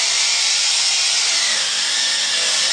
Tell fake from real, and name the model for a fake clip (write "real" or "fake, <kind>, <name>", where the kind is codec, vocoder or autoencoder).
real